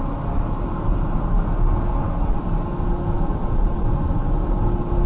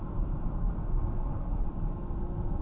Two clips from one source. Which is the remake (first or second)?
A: second